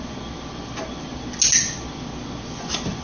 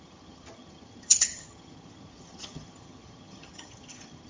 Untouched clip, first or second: first